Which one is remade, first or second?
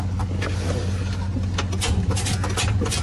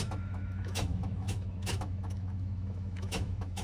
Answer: second